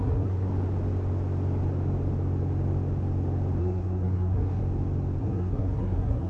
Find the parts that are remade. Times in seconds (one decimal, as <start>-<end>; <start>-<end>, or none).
0.0-0.5; 3.6-4.6; 5.2-6.3